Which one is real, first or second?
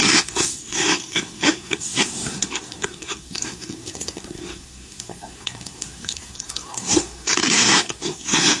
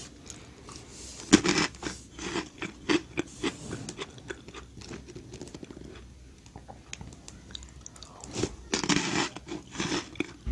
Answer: second